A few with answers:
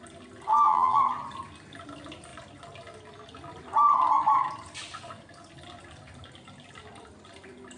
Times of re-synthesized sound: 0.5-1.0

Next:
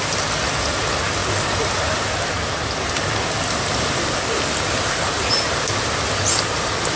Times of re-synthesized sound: none

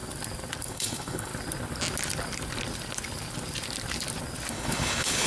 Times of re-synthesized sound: 0.6-1.3; 4.5-5.3

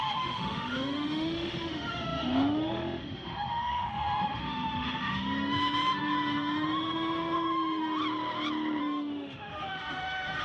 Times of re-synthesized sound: 0.0-8.0; 8.8-10.4